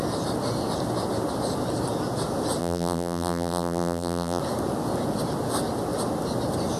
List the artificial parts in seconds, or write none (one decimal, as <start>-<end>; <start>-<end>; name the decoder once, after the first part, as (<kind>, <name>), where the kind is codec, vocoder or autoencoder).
2.6-4.4 (vocoder, BigVGAN v2)